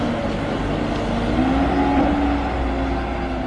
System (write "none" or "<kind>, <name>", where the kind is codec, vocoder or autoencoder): none